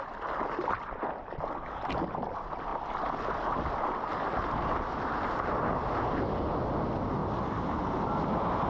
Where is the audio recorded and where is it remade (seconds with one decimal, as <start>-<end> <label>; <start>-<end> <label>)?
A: 0.0-8.7 recorded